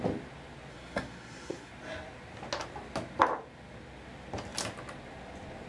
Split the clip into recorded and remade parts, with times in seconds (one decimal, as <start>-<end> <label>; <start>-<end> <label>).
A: 0.0-0.7 recorded; 0.7-1.7 remade; 1.7-5.7 recorded

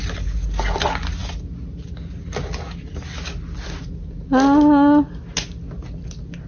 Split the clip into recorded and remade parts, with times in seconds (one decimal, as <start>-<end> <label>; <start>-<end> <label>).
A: 0.0-6.5 recorded